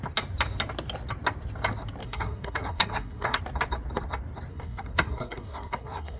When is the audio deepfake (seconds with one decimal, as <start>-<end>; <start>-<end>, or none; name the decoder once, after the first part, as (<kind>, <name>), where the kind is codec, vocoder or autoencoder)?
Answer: 2.0-3.4 (codec, SNAC); 4.5-6.2